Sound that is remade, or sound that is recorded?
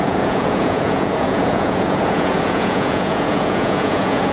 remade